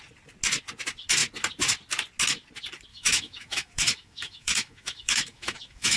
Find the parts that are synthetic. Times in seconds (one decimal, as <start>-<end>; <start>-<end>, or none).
2.9-6.0